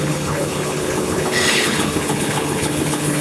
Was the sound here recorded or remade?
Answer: remade